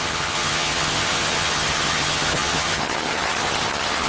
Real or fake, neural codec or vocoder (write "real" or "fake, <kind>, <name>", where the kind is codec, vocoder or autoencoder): fake, vocoder, HiFi-GAN